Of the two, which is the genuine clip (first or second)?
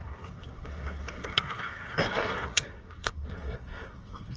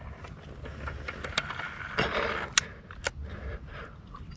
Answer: second